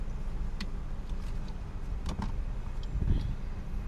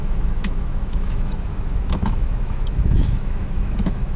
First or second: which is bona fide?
first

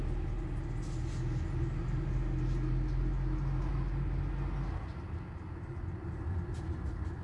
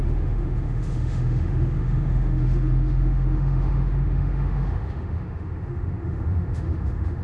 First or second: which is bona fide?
first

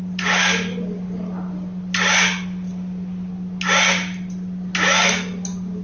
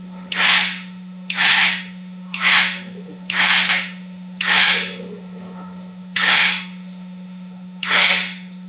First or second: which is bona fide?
first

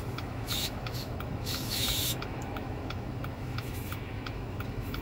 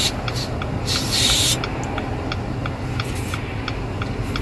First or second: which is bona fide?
second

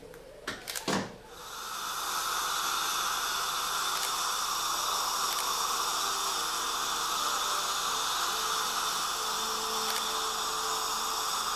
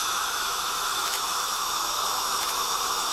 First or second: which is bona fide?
first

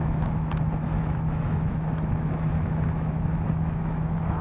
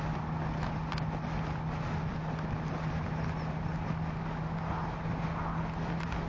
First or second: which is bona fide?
second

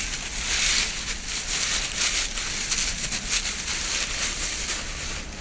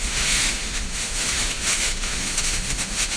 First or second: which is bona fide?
first